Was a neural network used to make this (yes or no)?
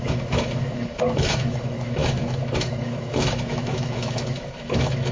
yes